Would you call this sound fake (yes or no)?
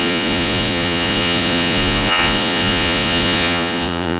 yes